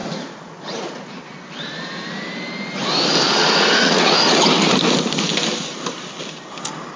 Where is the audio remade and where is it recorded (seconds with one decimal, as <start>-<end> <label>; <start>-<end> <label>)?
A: 0.0-1.2 remade; 1.2-3.4 recorded; 3.4-4.4 remade; 4.4-7.0 recorded

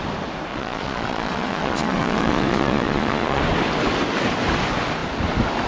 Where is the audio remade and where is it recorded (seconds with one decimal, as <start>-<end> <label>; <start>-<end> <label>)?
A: 0.0-0.5 recorded; 0.5-3.4 remade; 3.4-5.7 recorded

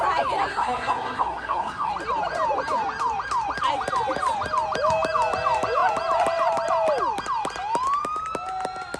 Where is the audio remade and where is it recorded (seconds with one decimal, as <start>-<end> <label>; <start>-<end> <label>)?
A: 0.0-0.5 recorded; 0.5-1.9 remade; 1.9-9.0 recorded

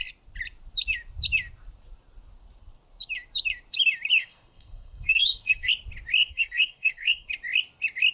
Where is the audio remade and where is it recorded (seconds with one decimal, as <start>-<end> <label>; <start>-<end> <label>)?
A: 0.0-4.2 recorded; 4.2-5.7 remade; 5.7-6.2 recorded; 6.2-7.3 remade; 7.3-8.1 recorded

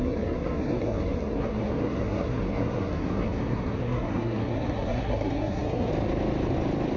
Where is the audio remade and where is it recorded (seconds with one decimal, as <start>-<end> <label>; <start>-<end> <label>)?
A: 0.0-5.9 remade; 5.9-7.0 recorded

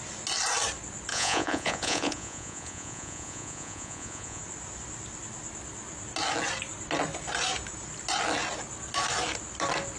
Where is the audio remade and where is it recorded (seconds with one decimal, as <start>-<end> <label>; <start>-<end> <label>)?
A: 0.0-1.1 recorded; 1.1-4.4 remade; 4.4-10.0 recorded